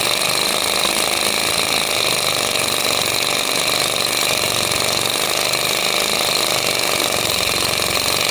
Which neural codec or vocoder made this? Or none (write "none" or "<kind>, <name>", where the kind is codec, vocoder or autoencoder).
none